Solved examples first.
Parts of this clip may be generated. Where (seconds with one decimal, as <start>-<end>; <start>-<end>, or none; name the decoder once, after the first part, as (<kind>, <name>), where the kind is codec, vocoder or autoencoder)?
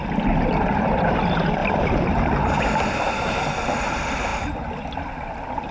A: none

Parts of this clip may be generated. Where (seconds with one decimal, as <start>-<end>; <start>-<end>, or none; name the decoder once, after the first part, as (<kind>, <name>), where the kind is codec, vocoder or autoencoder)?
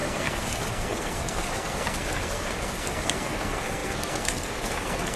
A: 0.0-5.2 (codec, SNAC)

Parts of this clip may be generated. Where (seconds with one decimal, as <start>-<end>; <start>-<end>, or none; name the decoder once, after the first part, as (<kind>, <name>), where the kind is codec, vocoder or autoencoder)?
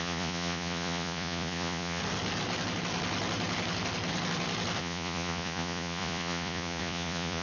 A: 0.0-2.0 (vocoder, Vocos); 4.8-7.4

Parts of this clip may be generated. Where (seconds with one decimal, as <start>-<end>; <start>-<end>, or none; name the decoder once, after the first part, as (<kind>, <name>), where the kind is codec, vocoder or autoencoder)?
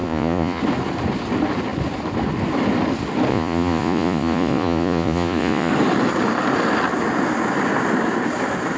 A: 0.0-0.6 (vocoder, Vocos); 3.3-5.7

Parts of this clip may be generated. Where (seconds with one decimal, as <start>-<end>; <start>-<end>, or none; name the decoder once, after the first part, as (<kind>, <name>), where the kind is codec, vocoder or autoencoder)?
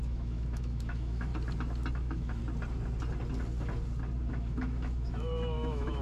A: 0.0-1.3 (autoencoder, DAC-VAE); 1.9-2.4; 4.3-6.0